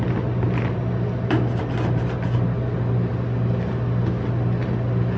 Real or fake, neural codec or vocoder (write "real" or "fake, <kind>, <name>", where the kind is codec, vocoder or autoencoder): real